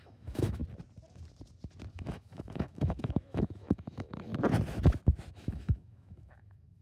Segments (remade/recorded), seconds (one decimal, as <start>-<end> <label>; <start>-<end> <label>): 0.0-0.6 remade; 0.6-1.9 recorded; 1.9-4.3 remade; 4.3-5.3 recorded; 5.3-6.8 remade